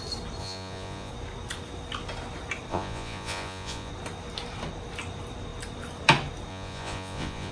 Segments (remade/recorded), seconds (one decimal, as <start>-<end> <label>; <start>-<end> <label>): 0.0-0.4 recorded; 0.4-1.1 remade; 1.1-2.7 recorded; 2.7-3.9 remade; 3.9-6.5 recorded; 6.5-7.5 remade